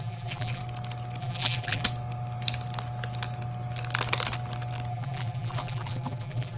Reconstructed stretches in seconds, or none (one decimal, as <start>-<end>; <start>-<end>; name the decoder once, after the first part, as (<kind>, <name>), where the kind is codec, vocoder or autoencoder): 0.0-0.6 (vocoder, BigVGAN v2); 1.2-1.8; 4.9-6.6